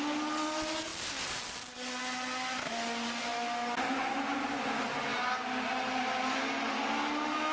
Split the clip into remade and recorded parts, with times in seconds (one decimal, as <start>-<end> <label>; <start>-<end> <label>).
0.0-7.5 recorded